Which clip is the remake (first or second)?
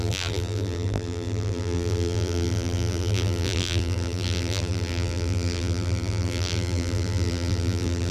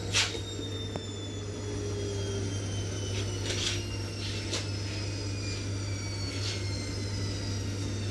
first